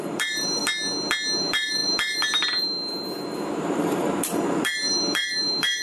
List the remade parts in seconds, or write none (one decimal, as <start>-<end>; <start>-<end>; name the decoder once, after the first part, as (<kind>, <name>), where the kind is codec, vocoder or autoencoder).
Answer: 0.0-0.6 (vocoder, BigVGAN v2); 1.4-5.8